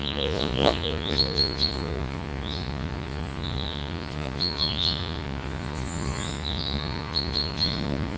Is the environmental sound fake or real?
fake